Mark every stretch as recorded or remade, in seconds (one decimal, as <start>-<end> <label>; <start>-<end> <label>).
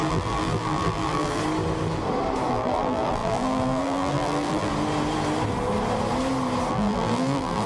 0.0-1.4 remade; 1.4-2.5 recorded; 2.5-4.7 remade; 4.7-6.7 recorded; 6.7-7.7 remade